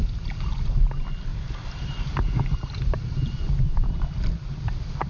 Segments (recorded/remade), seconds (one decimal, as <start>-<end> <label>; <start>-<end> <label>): 0.0-1.3 recorded; 1.3-4.4 remade; 4.4-5.1 recorded